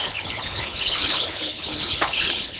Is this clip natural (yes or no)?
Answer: no